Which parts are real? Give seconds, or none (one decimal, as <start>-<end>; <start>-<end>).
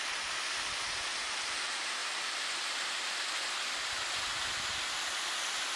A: 0.0-5.8